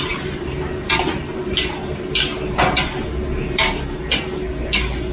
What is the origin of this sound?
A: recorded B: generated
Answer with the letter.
A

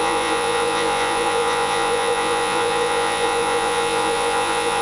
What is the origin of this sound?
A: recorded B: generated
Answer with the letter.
B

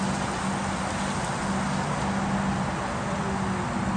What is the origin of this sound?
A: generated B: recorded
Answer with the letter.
B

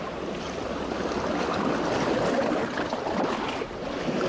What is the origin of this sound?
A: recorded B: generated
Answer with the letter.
A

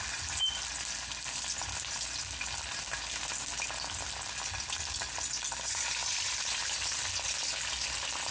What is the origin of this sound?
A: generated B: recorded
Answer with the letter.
B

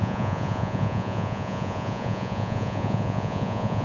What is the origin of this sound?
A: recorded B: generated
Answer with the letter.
B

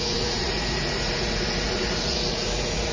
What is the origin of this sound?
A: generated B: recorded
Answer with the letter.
A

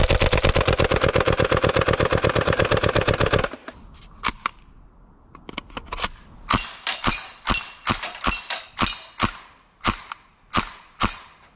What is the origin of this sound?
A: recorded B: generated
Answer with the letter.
A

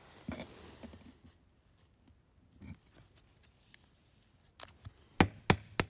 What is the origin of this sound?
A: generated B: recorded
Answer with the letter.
B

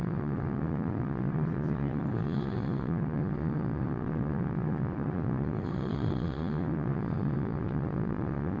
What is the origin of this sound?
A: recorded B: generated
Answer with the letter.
B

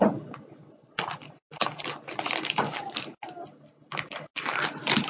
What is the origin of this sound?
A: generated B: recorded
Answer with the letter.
B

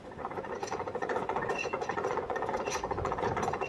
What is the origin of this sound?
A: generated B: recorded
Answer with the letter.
A